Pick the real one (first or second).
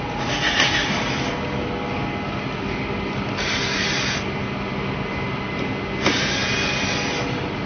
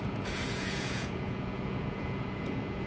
first